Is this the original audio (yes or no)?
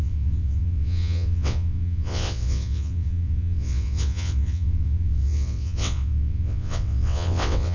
no